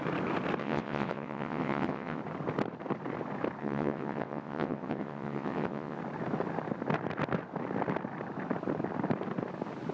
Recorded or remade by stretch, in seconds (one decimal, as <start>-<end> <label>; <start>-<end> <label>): 0.0-0.6 recorded; 0.6-2.2 remade; 2.2-3.6 recorded; 3.6-6.0 remade; 6.0-9.9 recorded